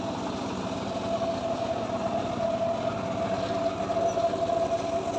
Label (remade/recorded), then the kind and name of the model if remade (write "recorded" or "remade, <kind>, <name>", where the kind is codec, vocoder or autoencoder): recorded